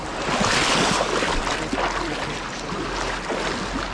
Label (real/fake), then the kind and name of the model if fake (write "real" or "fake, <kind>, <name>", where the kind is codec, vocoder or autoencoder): real